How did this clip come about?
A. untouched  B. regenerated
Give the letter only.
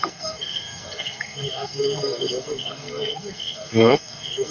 B